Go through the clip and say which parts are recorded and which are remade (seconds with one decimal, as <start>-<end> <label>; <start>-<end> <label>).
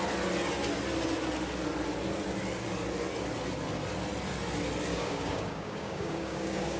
0.0-4.9 recorded; 4.9-6.8 remade